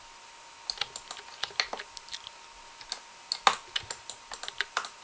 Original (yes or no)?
yes